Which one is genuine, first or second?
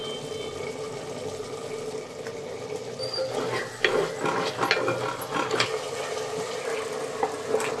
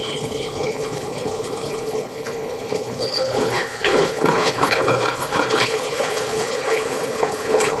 first